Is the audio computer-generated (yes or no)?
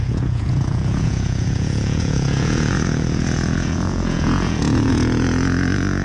yes